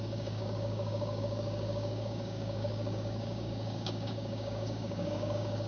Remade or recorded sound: remade